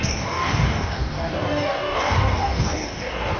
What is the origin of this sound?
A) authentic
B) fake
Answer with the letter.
B